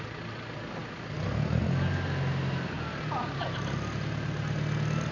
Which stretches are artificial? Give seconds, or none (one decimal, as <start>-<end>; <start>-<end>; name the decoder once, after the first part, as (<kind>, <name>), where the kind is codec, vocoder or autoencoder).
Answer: none